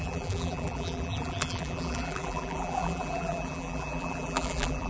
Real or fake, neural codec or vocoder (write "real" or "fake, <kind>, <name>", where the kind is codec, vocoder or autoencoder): fake, vocoder, BigVGAN v2